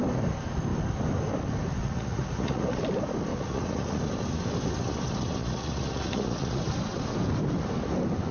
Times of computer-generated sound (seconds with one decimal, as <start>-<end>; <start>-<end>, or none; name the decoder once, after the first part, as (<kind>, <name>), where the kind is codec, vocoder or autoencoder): 1.8-2.8 (vocoder, Vocos); 3.3-4.0; 5.4-6.6